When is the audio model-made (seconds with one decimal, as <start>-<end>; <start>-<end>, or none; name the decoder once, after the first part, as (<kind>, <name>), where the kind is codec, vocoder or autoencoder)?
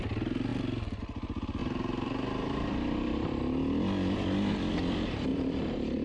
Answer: 1.6-3.4 (vocoder, BigVGAN v2); 5.3-6.0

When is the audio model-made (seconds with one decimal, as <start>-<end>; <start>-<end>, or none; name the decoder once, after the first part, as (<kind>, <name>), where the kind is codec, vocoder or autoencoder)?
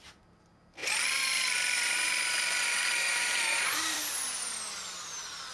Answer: 0.8-4.1 (vocoder, BigVGAN v2)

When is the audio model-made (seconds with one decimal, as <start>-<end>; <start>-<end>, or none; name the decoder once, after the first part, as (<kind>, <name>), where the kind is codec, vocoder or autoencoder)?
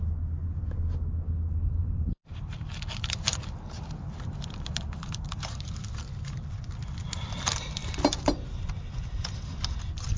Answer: 1.8-2.7 (vocoder, BigVGAN v2); 3.3-5.8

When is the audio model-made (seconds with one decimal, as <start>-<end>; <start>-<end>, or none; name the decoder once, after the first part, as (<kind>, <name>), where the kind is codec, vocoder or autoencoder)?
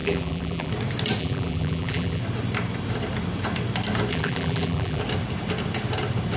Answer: 0.0-0.7 (vocoder, BigVGAN v2); 1.2-2.2; 4.1-5.0